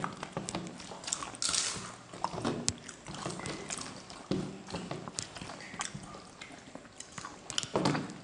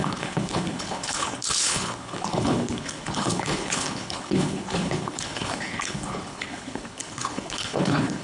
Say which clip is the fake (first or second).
second